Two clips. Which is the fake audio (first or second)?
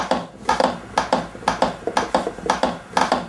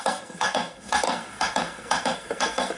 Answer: second